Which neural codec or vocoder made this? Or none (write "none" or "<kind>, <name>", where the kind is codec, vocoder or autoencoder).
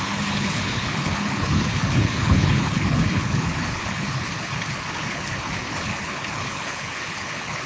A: codec, HILCodec